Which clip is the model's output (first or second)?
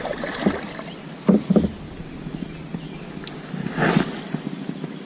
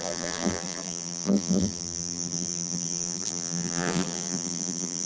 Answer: second